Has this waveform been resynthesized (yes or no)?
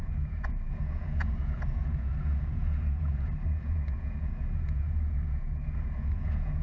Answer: yes